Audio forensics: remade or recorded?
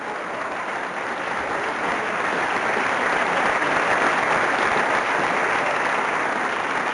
recorded